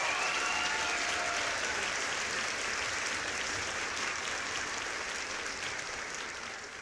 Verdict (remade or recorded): remade